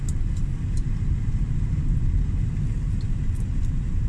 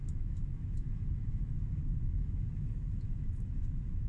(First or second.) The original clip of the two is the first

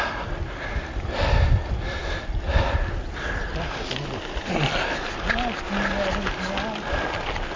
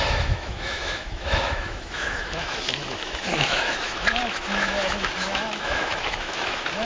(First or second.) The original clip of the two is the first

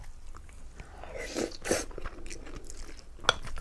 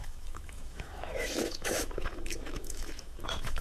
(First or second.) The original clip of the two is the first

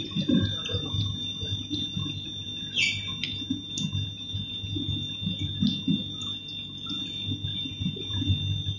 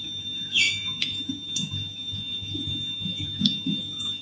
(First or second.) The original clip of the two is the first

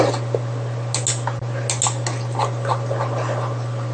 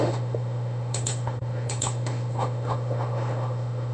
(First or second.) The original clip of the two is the first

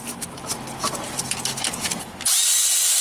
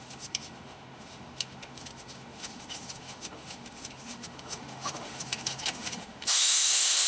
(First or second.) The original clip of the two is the first